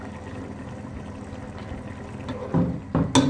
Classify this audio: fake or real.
real